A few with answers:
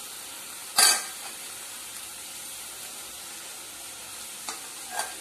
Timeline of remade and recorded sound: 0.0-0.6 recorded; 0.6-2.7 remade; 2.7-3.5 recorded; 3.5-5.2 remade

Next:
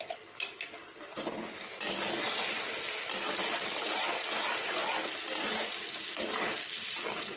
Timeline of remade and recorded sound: 0.0-7.4 recorded